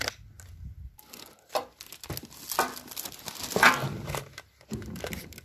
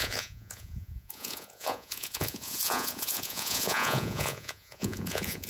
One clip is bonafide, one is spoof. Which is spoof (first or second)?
second